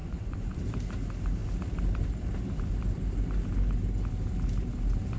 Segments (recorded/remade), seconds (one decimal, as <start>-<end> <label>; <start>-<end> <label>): 0.0-0.6 remade; 0.6-5.2 recorded

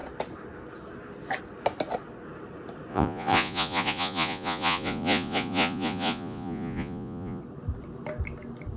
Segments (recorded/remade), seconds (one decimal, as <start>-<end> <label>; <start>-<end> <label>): 0.0-2.9 recorded; 2.9-7.4 remade; 7.4-8.8 recorded

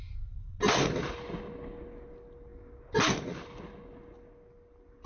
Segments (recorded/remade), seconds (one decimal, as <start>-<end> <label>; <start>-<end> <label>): 0.0-5.1 recorded

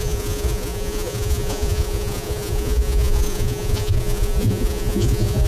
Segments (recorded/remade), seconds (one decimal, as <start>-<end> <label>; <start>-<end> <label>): 0.0-5.5 remade

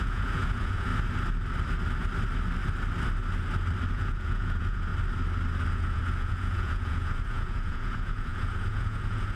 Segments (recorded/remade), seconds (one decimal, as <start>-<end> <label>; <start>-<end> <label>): 0.0-0.9 remade; 0.9-3.9 recorded; 3.9-4.9 remade; 4.9-5.7 recorded; 5.7-9.4 remade

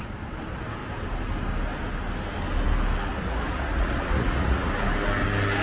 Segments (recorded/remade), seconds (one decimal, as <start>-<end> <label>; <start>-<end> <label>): 0.0-3.1 recorded; 3.1-4.7 remade; 4.7-5.6 recorded

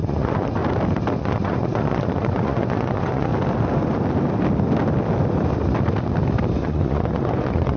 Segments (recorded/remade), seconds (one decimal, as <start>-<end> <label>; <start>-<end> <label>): 0.0-0.6 remade; 0.6-1.2 recorded; 1.2-3.3 remade; 3.3-6.6 recorded; 6.6-7.8 remade